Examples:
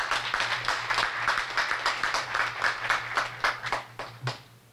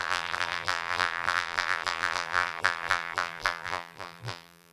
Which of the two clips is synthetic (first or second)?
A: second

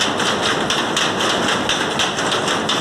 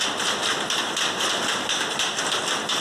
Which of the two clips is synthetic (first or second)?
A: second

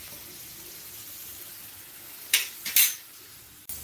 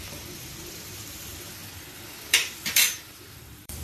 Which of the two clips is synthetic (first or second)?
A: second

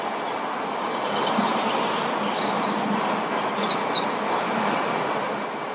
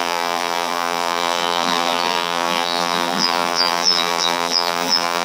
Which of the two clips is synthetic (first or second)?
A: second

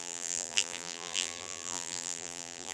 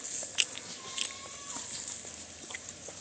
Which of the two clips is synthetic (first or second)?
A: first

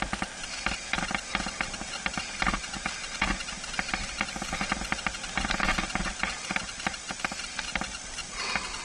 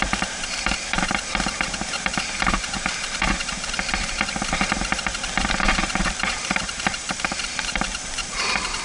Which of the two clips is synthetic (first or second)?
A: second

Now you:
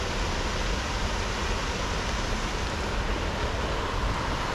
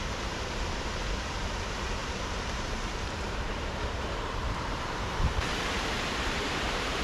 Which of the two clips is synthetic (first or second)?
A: second